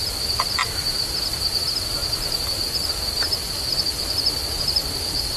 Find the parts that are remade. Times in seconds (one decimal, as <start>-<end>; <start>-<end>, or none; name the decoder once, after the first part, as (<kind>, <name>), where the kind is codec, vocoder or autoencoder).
none